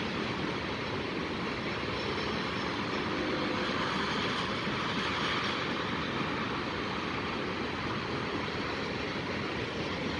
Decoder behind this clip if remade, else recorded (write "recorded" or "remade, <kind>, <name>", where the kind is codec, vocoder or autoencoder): recorded